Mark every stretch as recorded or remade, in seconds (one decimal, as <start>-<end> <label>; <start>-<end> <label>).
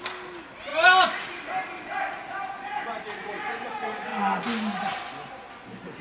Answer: 0.0-6.0 recorded